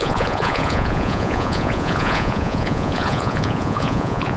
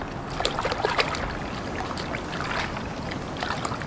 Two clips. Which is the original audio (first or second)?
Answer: second